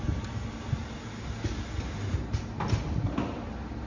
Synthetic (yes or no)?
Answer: no